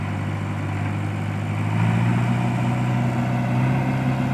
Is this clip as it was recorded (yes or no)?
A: yes